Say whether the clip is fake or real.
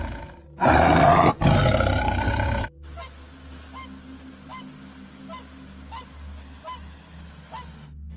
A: real